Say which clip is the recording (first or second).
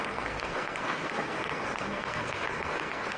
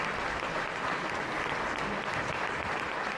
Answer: second